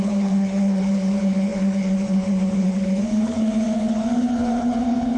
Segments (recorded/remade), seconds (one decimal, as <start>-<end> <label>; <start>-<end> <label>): 0.0-5.2 remade